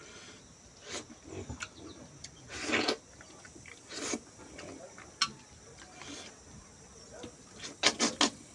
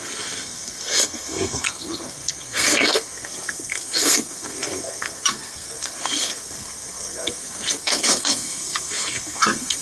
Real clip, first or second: first